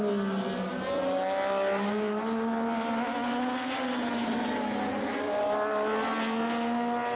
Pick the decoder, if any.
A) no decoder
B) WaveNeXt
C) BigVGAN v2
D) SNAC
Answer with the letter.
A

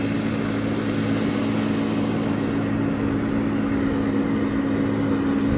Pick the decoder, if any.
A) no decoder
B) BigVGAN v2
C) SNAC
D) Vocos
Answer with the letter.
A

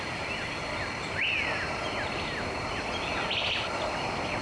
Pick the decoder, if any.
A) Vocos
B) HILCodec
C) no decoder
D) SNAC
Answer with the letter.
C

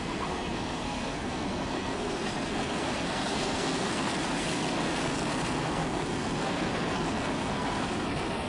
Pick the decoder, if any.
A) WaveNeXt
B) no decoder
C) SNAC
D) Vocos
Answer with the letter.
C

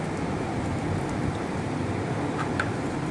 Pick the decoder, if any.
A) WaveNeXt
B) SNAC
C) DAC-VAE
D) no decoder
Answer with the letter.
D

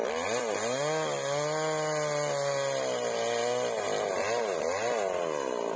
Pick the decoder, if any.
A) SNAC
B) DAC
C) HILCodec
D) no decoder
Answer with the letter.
D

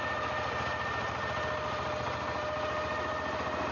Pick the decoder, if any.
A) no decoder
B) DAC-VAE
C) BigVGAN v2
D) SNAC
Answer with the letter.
A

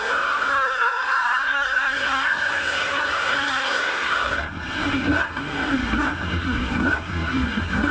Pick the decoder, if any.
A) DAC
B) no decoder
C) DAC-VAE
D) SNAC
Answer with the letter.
D